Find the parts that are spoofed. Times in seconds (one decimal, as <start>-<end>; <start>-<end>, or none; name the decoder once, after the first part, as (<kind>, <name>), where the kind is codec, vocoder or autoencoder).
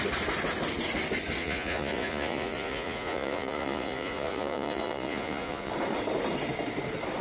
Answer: 1.4-5.7 (vocoder, Vocos)